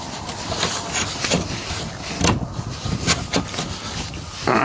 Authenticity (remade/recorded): recorded